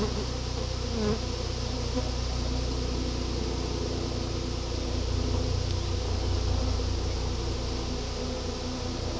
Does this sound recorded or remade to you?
recorded